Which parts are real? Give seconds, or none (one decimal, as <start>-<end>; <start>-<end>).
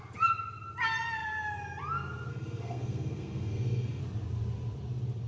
0.0-2.3; 4.0-5.3